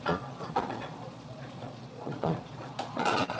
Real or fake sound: fake